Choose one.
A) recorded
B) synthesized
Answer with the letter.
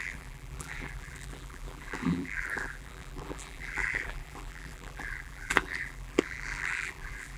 B